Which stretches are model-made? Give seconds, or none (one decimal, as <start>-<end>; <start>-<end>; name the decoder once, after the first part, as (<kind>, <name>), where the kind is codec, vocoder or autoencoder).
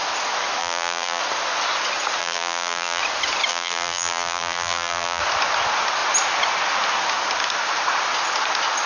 0.6-1.2 (vocoder, BigVGAN v2); 2.2-3.0; 3.5-5.2